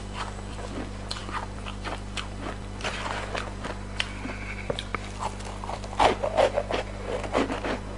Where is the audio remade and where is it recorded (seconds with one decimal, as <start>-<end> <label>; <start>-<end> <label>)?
0.0-8.0 recorded